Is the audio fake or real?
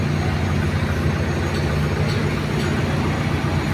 real